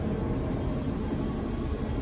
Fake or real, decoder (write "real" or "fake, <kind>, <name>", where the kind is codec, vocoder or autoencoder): real